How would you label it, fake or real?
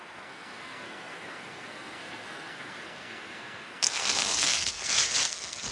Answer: fake